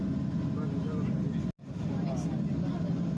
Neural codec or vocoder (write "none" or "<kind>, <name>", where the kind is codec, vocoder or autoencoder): none